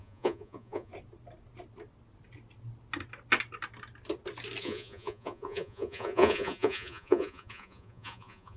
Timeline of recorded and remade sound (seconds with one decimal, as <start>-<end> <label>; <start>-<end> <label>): 0.0-0.9 remade; 0.9-4.6 recorded; 4.6-8.6 remade

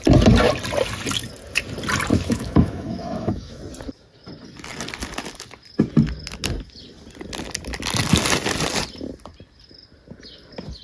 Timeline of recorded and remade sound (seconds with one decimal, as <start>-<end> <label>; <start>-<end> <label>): 0.0-2.1 recorded; 2.1-3.6 remade; 3.6-10.8 recorded

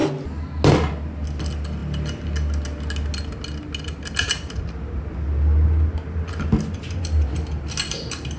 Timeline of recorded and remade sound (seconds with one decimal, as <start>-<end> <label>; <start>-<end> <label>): 0.0-8.4 recorded

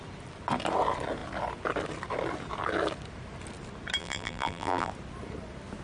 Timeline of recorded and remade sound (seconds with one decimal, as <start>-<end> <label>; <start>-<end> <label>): 0.0-4.0 recorded; 4.0-4.9 remade; 4.9-5.8 recorded

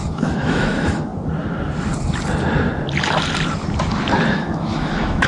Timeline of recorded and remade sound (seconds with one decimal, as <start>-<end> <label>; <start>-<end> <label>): 0.0-1.1 remade; 1.1-4.3 recorded; 4.3-5.3 remade

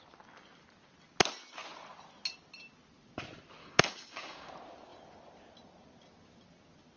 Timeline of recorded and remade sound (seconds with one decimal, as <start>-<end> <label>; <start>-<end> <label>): 0.0-3.6 recorded; 3.6-4.5 remade; 4.5-7.0 recorded

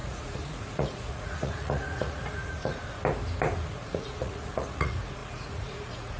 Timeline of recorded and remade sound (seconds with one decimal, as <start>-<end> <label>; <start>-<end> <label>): 0.0-2.8 remade; 2.8-3.7 recorded; 3.7-6.2 remade